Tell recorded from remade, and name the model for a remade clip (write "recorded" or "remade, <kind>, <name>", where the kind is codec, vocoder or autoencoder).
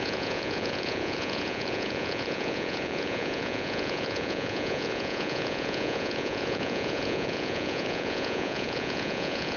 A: remade, vocoder, Vocos